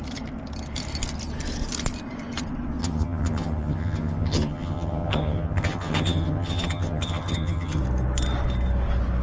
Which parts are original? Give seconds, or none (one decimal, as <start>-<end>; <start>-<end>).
0.0-2.8; 7.8-9.2